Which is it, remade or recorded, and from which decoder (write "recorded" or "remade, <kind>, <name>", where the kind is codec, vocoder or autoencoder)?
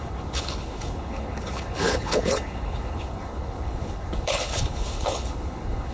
remade, codec, HILCodec